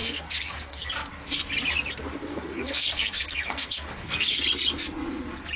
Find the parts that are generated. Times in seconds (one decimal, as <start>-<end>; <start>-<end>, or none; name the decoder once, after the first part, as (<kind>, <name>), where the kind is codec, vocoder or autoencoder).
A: 0.0-0.9 (codec, SNAC); 2.3-4.4